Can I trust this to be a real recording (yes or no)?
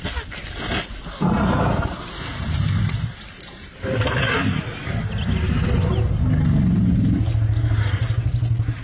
yes